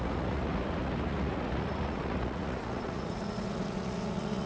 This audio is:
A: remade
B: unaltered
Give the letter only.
A